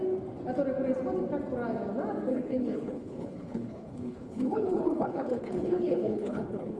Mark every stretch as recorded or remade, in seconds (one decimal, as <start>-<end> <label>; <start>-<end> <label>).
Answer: 0.0-2.3 recorded; 2.3-6.8 remade